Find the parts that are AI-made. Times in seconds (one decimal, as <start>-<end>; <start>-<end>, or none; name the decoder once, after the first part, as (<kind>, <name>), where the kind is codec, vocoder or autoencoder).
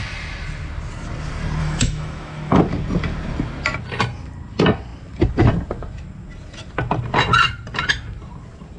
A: 1.6-2.6 (autoencoder, DAC-VAE)